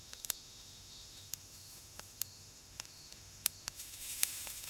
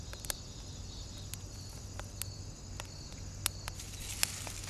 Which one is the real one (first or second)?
second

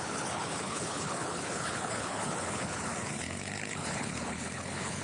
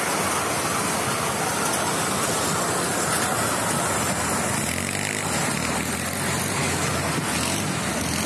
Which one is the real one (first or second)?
second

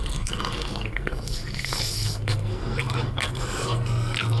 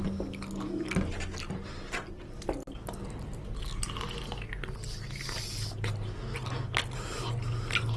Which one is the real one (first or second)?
second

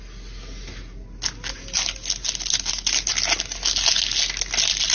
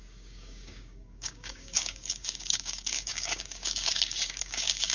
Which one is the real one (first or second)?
first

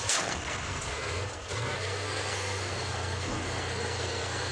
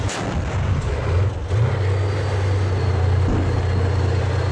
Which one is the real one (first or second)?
second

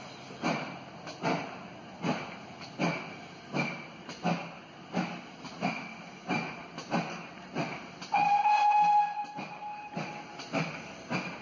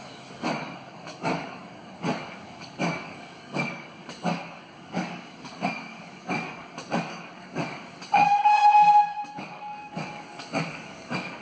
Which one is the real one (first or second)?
first